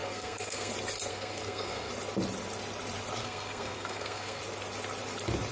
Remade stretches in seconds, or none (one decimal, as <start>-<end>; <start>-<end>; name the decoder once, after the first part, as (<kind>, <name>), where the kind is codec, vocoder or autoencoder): 0.0-0.7 (codec, SNAC); 1.1-1.9; 3.2-4.4